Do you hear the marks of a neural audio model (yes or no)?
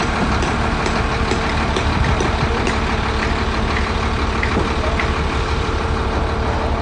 yes